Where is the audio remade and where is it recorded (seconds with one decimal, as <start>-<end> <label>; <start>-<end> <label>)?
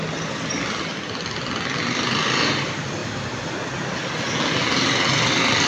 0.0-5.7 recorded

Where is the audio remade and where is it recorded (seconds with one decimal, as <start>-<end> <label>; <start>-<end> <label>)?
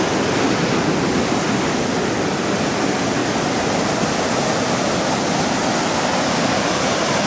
0.0-7.3 recorded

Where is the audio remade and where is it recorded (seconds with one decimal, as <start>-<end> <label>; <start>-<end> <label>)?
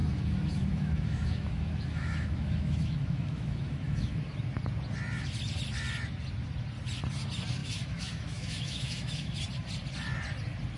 0.0-4.2 remade; 4.2-7.6 recorded; 7.6-9.4 remade; 9.4-10.8 recorded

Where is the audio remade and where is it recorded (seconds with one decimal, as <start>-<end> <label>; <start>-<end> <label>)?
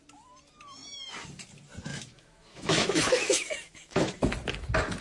0.0-1.9 recorded; 1.9-4.1 remade; 4.1-5.0 recorded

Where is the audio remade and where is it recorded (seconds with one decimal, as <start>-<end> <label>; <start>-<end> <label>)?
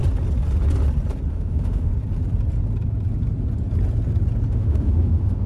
0.0-1.3 recorded; 1.3-1.9 remade; 1.9-4.5 recorded; 4.5-5.5 remade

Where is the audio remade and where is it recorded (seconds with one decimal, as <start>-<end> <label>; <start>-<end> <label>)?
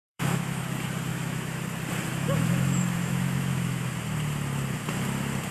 0.0-0.6 remade; 0.6-1.1 recorded; 1.1-1.6 remade; 1.6-2.1 recorded; 2.1-3.9 remade; 3.9-5.5 recorded